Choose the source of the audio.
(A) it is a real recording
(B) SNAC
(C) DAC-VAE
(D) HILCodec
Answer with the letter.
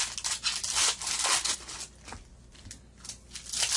A